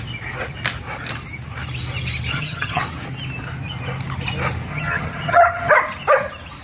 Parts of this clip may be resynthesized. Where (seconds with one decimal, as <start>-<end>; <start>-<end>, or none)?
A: 2.3-2.8; 4.7-5.7